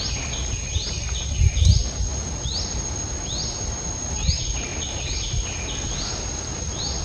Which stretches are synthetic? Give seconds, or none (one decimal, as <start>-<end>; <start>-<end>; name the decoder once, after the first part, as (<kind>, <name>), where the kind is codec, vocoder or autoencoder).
none